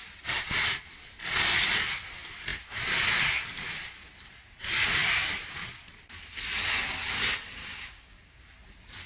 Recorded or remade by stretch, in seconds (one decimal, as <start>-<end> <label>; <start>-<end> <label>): 0.0-7.6 recorded; 7.6-8.5 remade; 8.5-9.1 recorded